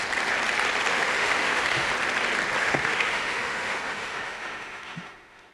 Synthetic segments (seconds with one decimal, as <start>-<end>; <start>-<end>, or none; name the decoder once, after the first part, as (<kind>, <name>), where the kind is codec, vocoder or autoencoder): 0.9-1.9 (autoencoder, DAC-VAE); 2.6-5.5